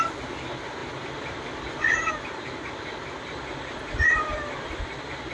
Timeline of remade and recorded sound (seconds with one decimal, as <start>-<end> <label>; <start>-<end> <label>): 0.0-0.8 recorded; 0.8-2.1 remade; 2.1-4.3 recorded; 4.3-4.8 remade; 4.8-5.3 recorded